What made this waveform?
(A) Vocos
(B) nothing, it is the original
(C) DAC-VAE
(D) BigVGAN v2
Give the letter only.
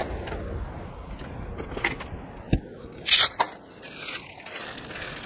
B